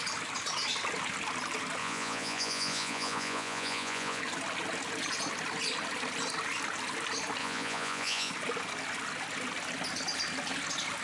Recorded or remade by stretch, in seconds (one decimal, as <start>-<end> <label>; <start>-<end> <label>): 0.0-1.8 recorded; 1.8-4.2 remade; 4.2-7.4 recorded; 7.4-8.3 remade; 8.3-11.0 recorded